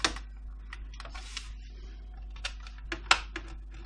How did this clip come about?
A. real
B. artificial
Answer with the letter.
A